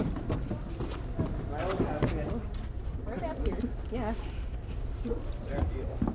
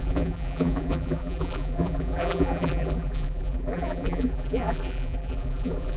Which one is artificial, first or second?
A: second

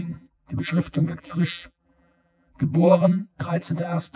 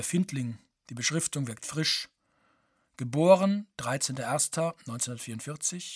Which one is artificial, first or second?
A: first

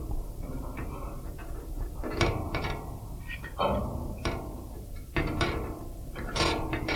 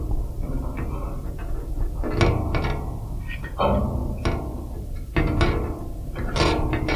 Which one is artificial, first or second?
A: first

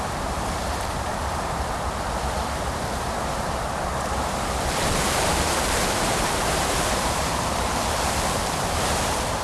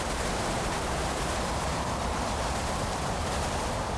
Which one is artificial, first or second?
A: first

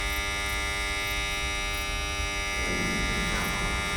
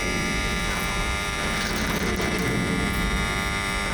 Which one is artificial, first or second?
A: second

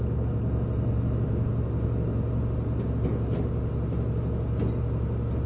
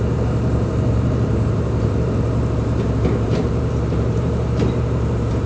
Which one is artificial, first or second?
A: second